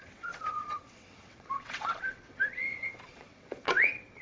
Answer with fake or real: fake